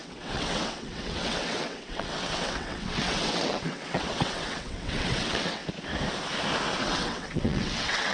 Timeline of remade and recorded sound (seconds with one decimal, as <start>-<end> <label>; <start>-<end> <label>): 0.0-5.6 remade; 5.6-6.8 recorded; 6.8-8.1 remade